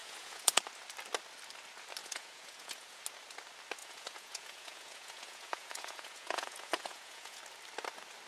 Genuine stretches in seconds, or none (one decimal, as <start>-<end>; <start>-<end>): 0.6-2.0; 3.0-3.8; 7.4-8.3